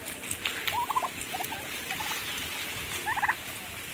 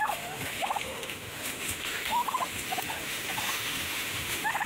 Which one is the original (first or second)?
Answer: first